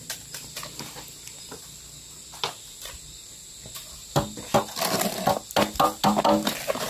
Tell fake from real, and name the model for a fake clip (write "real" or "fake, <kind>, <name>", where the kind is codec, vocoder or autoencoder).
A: real